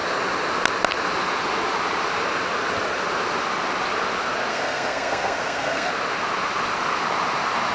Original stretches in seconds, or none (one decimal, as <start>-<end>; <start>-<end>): 0.0-4.5; 5.9-7.7